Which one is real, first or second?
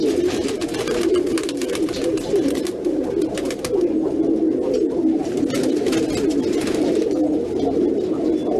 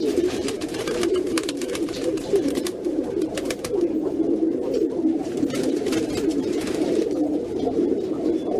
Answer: first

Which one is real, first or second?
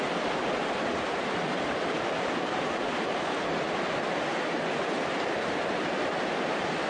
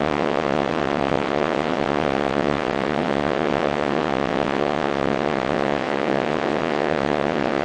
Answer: first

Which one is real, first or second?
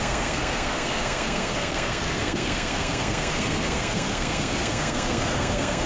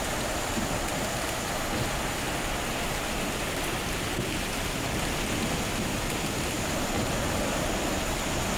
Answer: second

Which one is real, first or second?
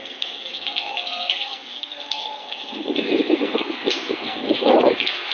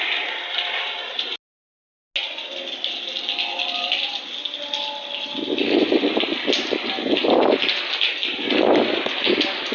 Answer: second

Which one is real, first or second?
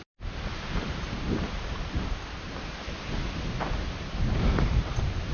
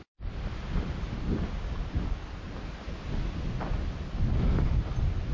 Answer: second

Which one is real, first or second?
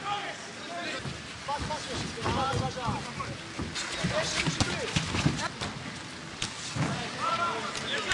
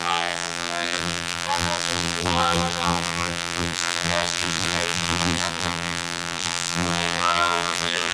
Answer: first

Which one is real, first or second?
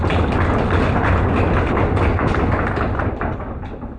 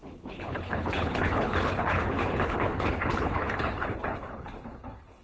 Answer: first